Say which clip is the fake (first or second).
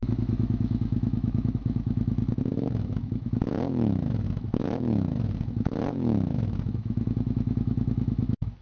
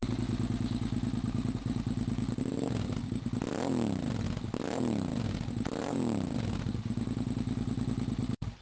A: first